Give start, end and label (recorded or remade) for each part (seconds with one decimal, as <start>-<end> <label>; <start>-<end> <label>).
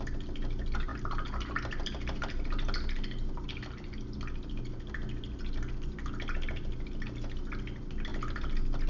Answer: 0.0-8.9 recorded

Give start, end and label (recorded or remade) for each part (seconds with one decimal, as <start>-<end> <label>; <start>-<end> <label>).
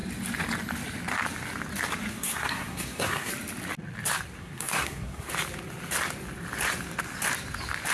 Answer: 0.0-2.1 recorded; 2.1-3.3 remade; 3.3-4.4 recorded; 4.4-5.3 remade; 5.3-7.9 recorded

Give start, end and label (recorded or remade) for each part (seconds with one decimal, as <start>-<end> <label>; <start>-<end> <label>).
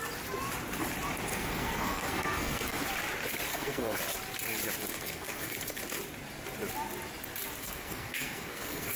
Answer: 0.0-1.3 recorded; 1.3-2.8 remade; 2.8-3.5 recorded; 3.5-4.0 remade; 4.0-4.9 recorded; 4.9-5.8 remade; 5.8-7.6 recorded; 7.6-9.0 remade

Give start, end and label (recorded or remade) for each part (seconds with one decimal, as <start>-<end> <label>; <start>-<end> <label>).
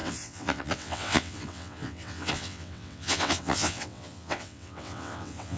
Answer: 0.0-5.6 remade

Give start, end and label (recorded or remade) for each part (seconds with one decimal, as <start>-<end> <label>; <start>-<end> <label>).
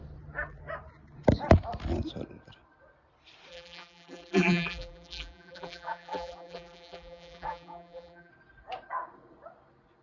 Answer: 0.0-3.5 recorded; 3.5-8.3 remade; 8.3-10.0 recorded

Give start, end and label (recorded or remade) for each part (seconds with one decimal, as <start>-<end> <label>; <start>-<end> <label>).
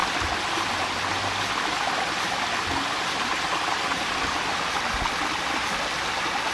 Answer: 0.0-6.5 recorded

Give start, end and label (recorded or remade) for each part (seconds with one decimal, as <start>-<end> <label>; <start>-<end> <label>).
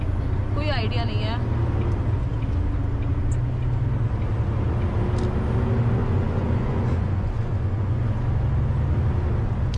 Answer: 0.0-6.0 recorded; 6.0-8.3 remade; 8.3-9.8 recorded